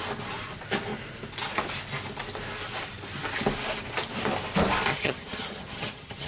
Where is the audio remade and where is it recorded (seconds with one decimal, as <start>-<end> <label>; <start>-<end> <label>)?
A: 0.0-4.9 recorded; 4.9-6.3 remade